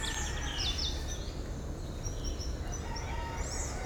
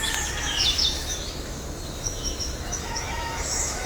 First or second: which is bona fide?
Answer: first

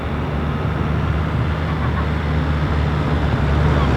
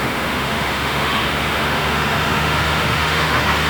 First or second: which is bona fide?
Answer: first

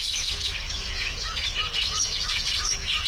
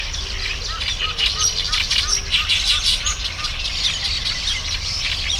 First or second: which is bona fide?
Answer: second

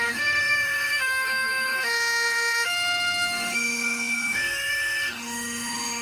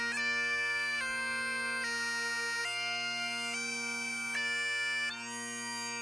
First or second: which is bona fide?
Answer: second